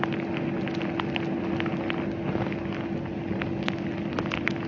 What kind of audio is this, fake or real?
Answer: real